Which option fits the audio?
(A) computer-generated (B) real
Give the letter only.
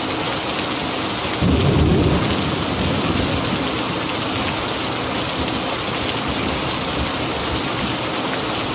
B